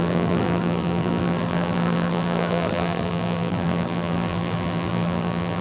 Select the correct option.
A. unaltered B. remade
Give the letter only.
B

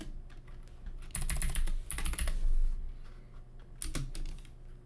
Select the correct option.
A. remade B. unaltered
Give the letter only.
B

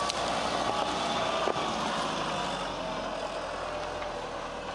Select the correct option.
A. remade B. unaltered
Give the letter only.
B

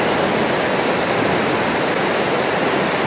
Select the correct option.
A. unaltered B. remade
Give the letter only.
A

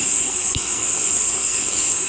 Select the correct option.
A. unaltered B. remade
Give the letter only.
B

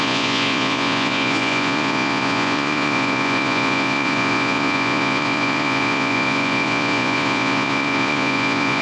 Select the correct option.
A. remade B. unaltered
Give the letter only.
A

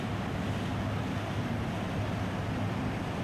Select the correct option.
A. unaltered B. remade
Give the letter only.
A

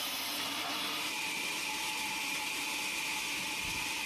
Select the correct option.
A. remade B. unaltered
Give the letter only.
B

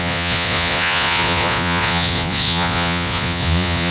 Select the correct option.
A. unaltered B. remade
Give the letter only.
B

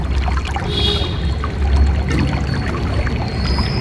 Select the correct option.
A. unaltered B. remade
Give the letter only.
A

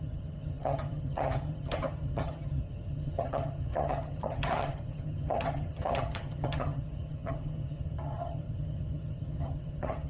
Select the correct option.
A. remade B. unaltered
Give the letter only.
A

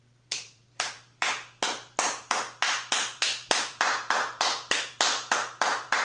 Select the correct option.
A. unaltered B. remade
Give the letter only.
B